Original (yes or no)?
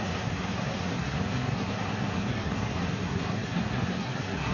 no